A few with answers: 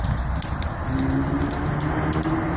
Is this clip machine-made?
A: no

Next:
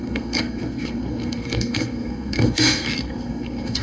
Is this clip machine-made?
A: yes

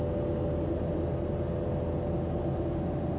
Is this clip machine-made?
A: no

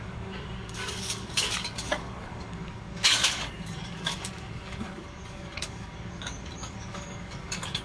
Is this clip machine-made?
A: yes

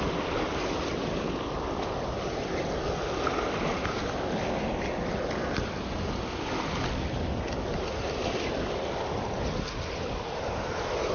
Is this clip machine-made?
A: no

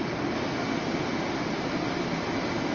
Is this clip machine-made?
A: no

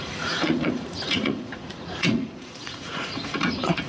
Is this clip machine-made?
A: yes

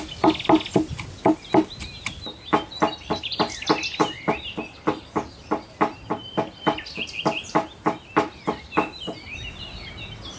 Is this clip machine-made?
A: no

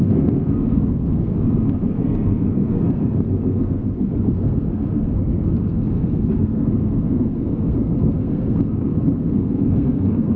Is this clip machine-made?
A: yes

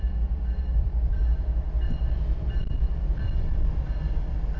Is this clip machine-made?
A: no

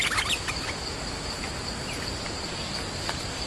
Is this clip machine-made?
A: no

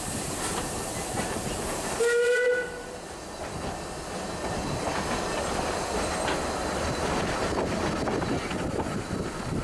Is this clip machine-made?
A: no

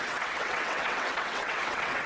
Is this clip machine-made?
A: yes